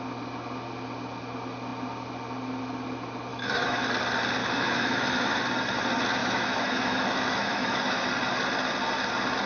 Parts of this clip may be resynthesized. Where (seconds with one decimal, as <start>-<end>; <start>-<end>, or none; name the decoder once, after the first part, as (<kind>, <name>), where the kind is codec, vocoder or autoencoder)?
3.3-3.9 (autoencoder, DAC-VAE); 4.4-5.4; 6.2-8.1